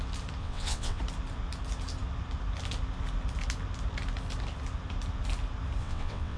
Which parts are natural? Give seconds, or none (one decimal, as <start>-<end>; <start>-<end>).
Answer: 0.0-0.4; 1.0-5.8